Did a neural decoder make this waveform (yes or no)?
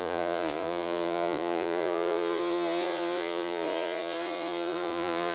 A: yes